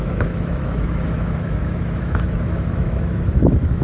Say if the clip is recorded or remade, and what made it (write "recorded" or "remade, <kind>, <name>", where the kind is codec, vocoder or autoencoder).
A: remade, autoencoder, DAC-VAE